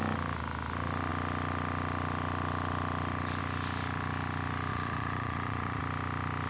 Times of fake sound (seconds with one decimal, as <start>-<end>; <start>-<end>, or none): 4.7-5.8